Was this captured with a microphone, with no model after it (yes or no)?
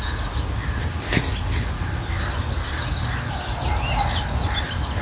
yes